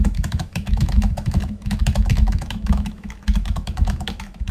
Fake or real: fake